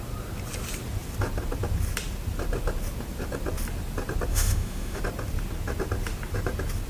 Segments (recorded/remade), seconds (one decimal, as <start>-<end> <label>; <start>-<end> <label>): 0.0-4.3 recorded; 4.3-5.0 remade; 5.0-6.9 recorded